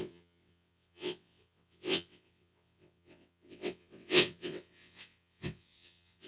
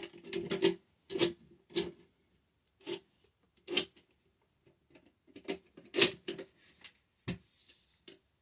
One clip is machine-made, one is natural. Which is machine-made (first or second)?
first